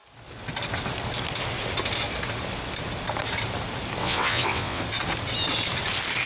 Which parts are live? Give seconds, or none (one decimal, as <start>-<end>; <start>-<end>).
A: 0.0-4.0; 4.8-6.3

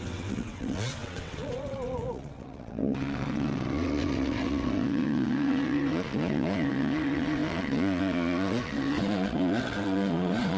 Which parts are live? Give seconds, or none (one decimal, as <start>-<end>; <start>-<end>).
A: none

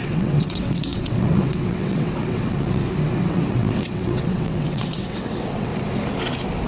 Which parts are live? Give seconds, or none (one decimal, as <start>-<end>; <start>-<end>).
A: 2.8-3.3; 5.7-6.7

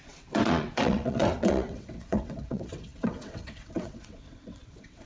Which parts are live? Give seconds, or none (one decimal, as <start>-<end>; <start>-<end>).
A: none

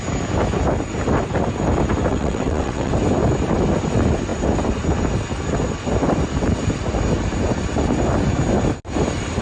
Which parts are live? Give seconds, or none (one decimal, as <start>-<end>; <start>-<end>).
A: 0.0-2.1; 2.9-9.4